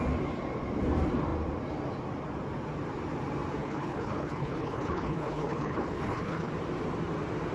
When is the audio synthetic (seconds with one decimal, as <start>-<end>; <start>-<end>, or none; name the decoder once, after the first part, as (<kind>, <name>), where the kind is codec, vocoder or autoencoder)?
3.6-6.5 (codec, HILCodec)